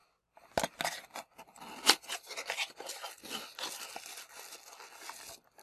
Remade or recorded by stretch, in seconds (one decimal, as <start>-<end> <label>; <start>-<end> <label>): 0.0-5.6 recorded